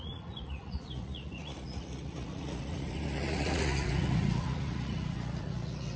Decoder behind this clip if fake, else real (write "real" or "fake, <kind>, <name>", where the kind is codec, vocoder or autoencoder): fake, vocoder, Vocos